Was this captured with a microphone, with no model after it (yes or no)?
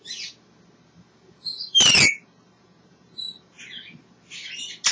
yes